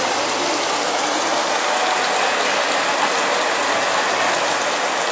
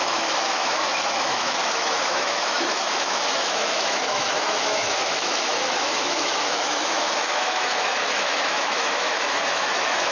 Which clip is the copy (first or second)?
second